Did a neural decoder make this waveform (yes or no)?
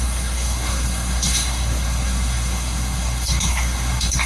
yes